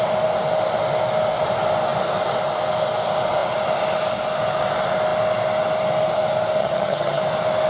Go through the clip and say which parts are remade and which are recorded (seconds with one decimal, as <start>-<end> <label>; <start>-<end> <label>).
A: 0.0-6.6 recorded; 6.6-7.2 remade; 7.2-7.7 recorded